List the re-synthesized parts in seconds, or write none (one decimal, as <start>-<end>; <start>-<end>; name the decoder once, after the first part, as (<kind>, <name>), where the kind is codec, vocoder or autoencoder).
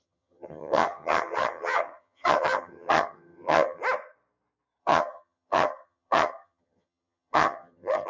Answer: 0.0-3.8 (vocoder, HiFi-GAN); 4.8-8.1